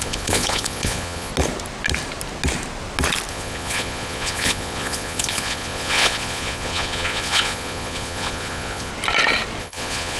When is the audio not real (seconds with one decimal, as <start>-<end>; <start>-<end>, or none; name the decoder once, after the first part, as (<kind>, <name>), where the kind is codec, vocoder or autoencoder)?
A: 0.0-1.3 (vocoder, Vocos); 3.3-8.9; 9.6-10.2